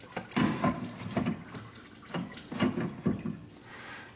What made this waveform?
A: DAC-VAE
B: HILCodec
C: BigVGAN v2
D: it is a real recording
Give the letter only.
D